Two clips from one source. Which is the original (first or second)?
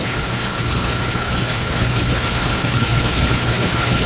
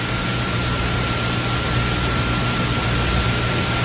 second